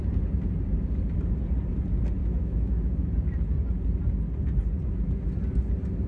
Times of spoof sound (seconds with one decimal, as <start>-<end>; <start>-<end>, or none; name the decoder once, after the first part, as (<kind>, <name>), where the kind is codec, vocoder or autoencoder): 2.2-2.9 (autoencoder, DAC-VAE)